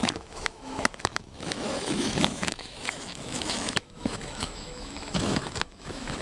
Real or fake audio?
fake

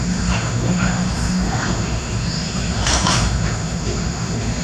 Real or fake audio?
fake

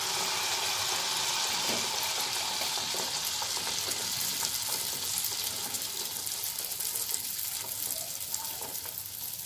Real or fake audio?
real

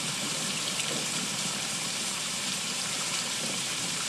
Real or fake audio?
fake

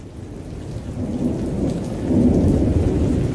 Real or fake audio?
real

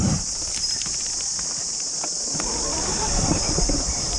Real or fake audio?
real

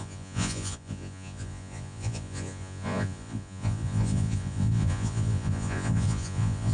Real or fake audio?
fake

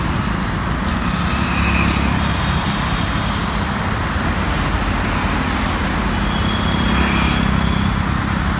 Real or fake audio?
real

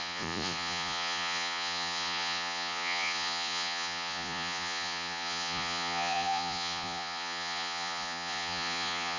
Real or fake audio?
fake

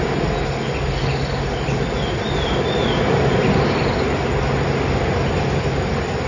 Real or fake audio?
real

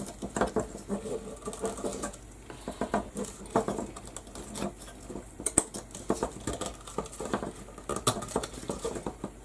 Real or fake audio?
real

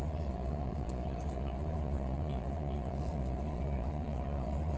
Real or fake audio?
fake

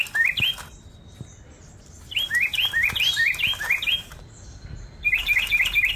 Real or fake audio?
real